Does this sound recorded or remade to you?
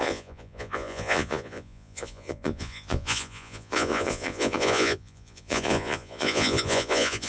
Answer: remade